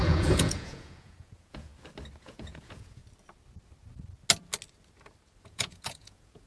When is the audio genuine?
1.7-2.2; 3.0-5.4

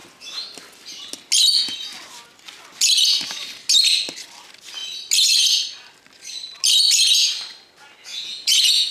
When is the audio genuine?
0.0-8.1

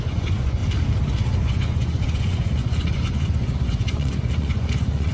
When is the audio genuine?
0.6-1.4

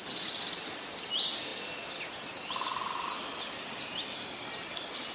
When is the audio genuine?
0.0-5.1

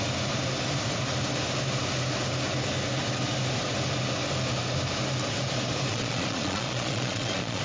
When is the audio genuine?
0.0-5.9

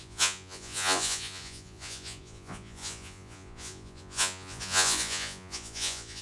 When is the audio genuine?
none

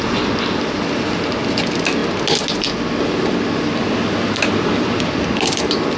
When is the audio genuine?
0.0-6.0